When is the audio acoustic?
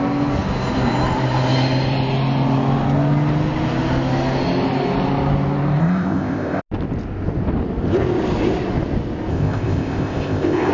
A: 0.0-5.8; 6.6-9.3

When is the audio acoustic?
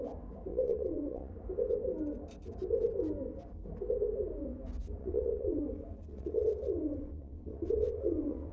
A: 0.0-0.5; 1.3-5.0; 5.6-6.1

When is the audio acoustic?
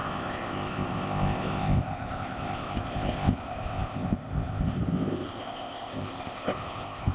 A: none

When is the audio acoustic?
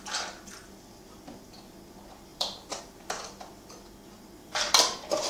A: 0.0-2.3; 2.8-4.4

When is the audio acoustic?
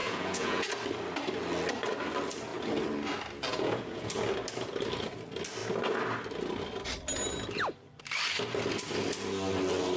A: 0.7-3.5; 4.1-10.0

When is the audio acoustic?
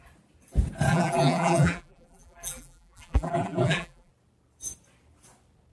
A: 0.0-0.9; 4.1-5.7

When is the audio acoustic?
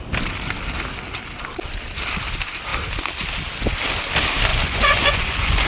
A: 0.0-4.5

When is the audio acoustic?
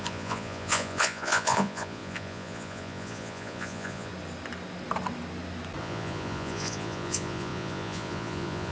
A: 4.1-5.8